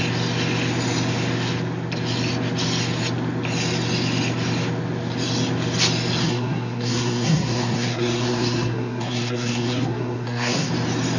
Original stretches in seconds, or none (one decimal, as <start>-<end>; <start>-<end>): 0.0-6.2; 10.7-11.2